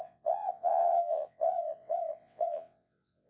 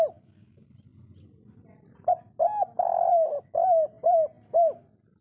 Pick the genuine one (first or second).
second